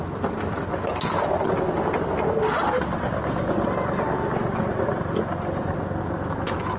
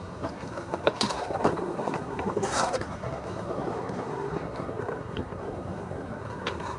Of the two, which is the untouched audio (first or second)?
first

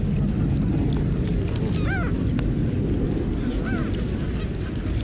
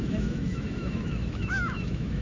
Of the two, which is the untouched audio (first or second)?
first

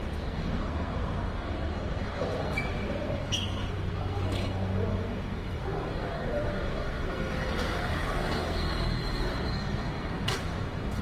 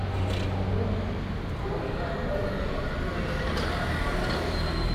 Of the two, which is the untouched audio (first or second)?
second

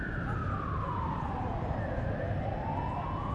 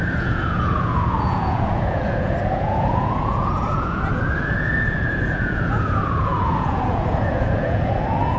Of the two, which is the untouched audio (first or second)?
first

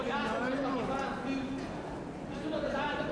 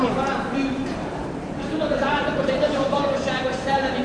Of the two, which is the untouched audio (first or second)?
first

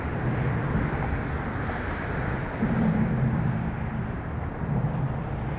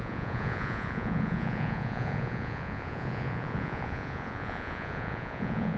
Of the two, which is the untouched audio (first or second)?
first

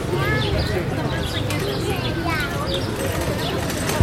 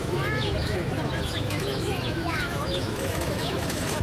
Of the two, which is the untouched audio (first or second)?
first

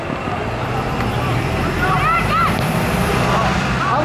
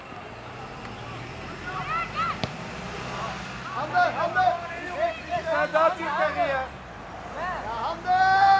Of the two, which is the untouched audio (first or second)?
second